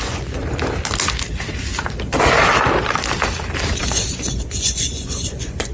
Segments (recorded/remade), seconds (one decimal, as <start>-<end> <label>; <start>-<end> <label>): 0.0-0.4 remade; 0.4-3.8 recorded; 3.8-5.7 remade